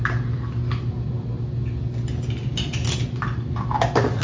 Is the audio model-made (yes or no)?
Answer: no